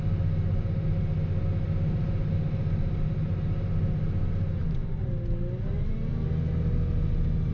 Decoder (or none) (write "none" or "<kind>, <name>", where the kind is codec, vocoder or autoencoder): none